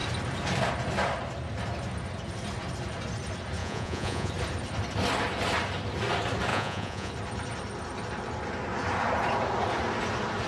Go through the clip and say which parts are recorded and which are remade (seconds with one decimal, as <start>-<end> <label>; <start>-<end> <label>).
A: 0.0-3.6 recorded; 3.6-4.3 remade; 4.3-6.5 recorded; 6.5-7.1 remade; 7.1-10.5 recorded